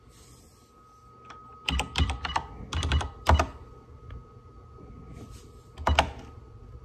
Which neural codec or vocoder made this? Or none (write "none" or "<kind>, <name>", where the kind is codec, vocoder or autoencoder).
none